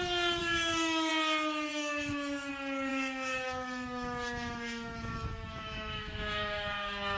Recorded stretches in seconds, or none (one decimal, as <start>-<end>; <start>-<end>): 0.0-0.4; 1.1-1.7; 2.5-2.9